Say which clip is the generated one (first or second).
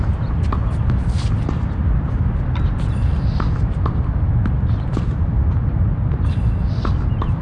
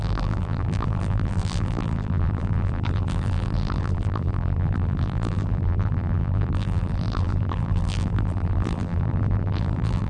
second